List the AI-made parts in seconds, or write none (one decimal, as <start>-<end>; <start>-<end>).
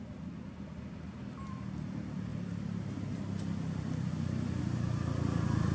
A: none